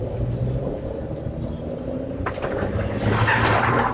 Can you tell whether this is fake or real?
real